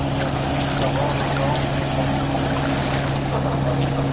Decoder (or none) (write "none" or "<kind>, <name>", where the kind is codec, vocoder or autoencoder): none